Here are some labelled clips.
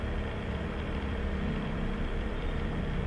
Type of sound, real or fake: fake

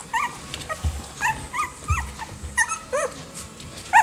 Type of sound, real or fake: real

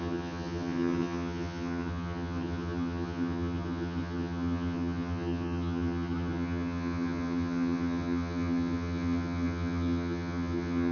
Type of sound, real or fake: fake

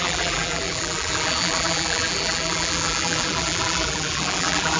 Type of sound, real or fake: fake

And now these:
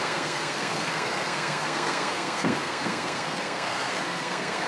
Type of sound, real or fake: fake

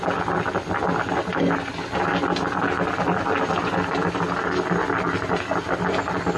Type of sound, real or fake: real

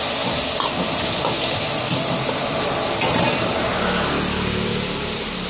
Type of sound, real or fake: real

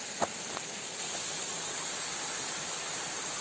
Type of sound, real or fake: real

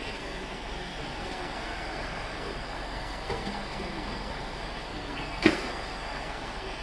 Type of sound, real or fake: fake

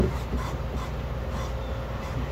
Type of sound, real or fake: real